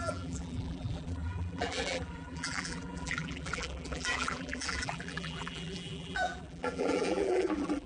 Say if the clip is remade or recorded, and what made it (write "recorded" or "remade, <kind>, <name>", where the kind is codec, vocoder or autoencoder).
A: remade, vocoder, BigVGAN v2